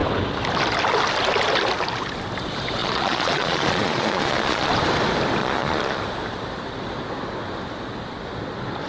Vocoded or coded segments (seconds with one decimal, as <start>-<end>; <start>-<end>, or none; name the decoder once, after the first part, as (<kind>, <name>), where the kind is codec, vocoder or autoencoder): 2.8-4.7 (vocoder, Vocos); 5.4-6.0

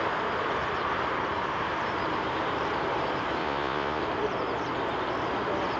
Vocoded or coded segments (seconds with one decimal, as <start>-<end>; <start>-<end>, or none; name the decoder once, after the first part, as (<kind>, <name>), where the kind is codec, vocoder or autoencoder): 3.4-4.0 (vocoder, Vocos)

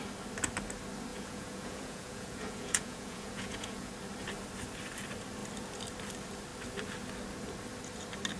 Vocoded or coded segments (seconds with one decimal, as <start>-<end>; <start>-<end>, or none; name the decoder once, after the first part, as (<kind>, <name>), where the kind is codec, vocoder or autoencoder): 1.1-3.9 (vocoder, Vocos)

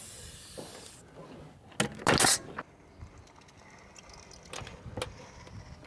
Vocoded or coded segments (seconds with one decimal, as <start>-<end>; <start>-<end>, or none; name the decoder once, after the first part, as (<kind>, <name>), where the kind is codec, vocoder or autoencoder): none

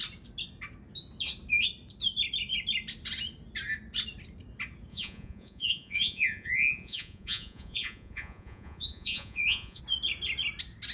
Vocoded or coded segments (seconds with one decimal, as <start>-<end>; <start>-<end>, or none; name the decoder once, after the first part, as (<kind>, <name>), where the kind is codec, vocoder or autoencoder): 4.9-9.8 (vocoder, Vocos)

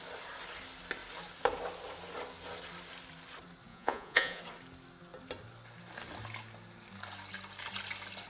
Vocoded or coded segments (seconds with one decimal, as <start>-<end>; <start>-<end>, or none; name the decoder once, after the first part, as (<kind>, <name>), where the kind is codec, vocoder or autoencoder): 3.7-4.4 (vocoder, Vocos)